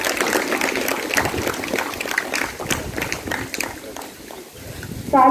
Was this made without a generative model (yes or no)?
yes